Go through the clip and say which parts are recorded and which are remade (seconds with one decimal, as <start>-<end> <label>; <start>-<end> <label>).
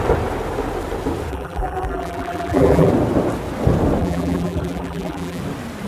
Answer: 0.0-1.3 recorded; 1.3-2.9 remade; 2.9-4.0 recorded; 4.0-5.4 remade; 5.4-5.9 recorded